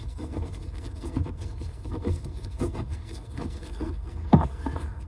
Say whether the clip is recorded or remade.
remade